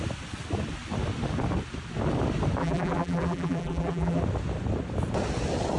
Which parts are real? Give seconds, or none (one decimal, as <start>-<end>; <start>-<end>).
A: 0.0-2.6; 4.2-5.8